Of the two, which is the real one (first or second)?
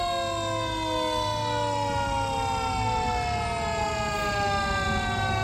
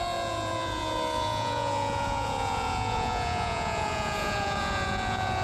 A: first